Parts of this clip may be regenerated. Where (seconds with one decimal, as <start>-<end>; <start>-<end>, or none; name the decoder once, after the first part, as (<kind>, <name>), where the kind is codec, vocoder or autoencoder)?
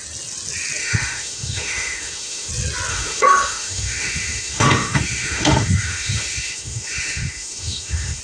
0.8-2.5 (autoencoder, DAC-VAE); 2.9-8.2